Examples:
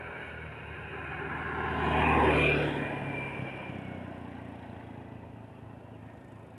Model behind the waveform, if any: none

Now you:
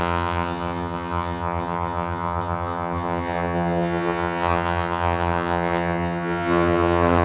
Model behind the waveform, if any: vocoder, HiFi-GAN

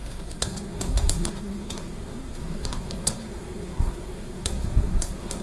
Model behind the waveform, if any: codec, SNAC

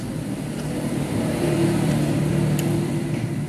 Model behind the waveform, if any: vocoder, BigVGAN v2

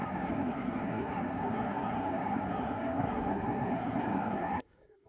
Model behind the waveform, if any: codec, SNAC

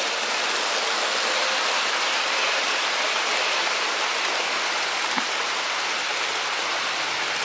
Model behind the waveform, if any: none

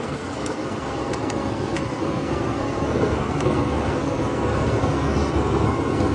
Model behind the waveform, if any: codec, SNAC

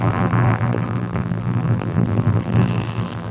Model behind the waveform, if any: vocoder, BigVGAN v2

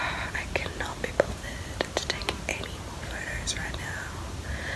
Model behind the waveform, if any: none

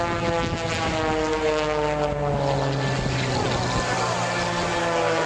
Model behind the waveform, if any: none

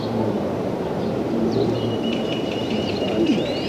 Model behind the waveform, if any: vocoder, BigVGAN v2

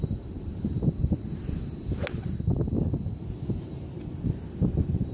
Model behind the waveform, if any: none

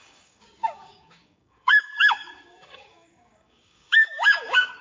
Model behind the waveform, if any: codec, DAC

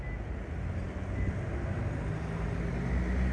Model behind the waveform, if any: none